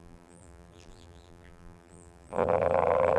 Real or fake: fake